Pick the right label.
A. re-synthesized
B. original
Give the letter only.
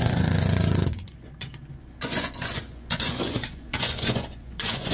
A